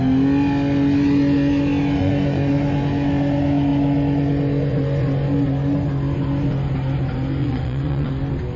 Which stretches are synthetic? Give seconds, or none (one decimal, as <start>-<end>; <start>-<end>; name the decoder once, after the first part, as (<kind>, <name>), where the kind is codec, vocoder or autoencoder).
2.0-2.5 (vocoder, Vocos); 7.4-8.1